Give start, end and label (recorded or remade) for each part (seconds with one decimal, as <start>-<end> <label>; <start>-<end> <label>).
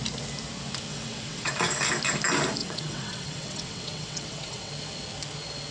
0.0-0.9 recorded; 0.9-1.5 remade; 1.5-2.6 recorded; 2.6-4.7 remade; 4.7-5.7 recorded